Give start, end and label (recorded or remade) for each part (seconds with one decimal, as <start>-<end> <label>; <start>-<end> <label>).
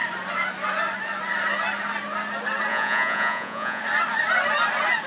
0.0-2.7 recorded; 2.7-3.8 remade; 3.8-5.1 recorded